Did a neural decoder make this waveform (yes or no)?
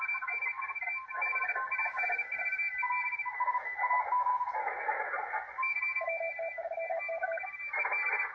no